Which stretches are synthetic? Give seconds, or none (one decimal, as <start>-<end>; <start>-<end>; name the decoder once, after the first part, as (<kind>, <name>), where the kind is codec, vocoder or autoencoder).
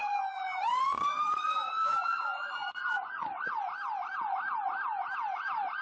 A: 0.0-3.5 (vocoder, Vocos)